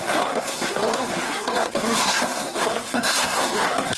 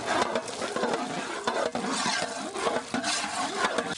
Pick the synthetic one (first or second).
first